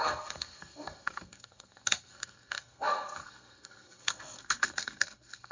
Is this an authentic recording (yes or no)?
no